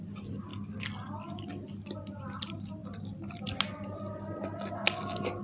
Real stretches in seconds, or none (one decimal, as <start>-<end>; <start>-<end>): 0.0-5.4